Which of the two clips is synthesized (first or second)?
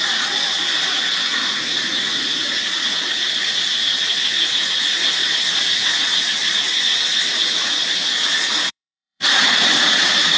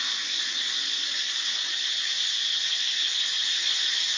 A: first